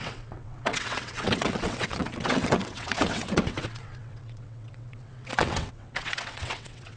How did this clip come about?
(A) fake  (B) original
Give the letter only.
A